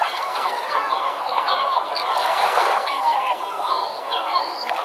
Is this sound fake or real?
fake